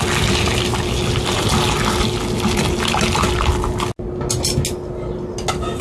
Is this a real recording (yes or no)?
yes